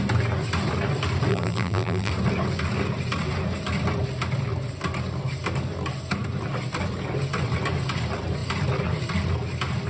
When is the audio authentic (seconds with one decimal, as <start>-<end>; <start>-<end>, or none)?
0.0-1.3; 2.1-9.9